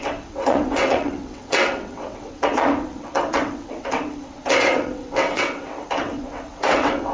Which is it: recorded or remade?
remade